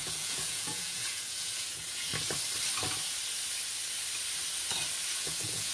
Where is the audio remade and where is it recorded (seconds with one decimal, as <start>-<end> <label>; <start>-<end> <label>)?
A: 0.0-2.1 remade; 2.1-5.2 recorded; 5.2-5.7 remade